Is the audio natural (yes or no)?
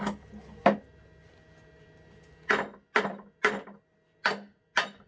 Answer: yes